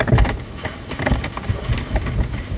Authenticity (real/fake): real